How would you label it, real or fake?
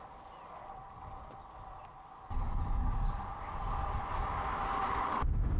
real